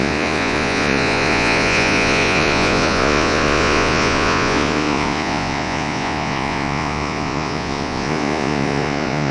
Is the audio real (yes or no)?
no